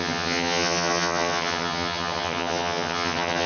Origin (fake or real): fake